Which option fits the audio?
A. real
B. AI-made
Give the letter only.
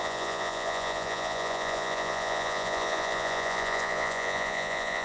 B